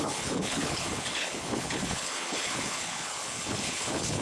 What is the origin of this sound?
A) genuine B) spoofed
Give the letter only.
B